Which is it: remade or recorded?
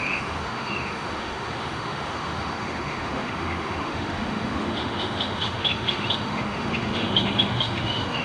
remade